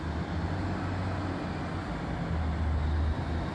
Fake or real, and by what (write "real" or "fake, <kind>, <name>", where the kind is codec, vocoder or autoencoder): real